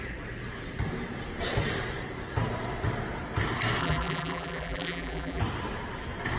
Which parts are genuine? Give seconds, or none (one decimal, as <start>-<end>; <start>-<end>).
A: 0.0-3.8; 5.4-6.4